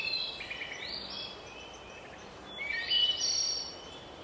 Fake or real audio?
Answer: real